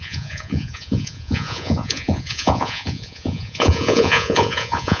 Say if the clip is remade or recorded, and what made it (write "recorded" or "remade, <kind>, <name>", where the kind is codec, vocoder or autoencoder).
remade, vocoder, Vocos